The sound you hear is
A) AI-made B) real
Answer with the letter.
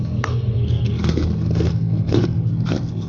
A